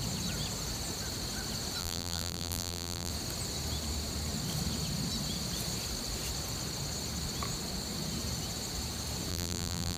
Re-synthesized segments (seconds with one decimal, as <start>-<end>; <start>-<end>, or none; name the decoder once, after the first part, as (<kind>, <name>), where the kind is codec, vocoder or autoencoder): 1.8-3.1 (vocoder, BigVGAN v2); 9.3-10.0